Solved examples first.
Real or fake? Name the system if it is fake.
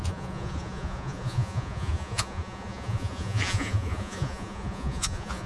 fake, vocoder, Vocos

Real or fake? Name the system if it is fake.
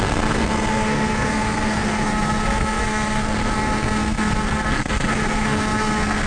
fake, codec, SNAC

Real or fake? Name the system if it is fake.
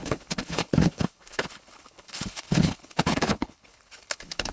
fake, codec, HILCodec